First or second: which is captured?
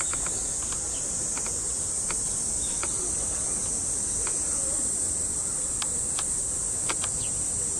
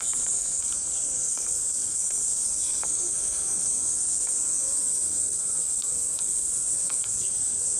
first